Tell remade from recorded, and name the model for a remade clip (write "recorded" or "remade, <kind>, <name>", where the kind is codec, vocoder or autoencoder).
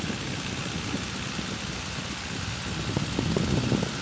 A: recorded